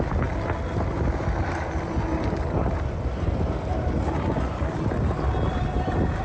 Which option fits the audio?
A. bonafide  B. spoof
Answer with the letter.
A